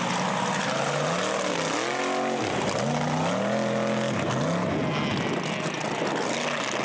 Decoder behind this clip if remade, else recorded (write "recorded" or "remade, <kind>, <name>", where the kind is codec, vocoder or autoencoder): recorded